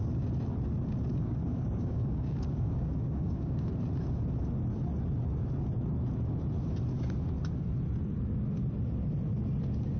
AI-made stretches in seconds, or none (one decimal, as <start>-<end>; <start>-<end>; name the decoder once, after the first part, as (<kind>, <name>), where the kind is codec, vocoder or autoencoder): 1.1-3.7 (codec, DAC)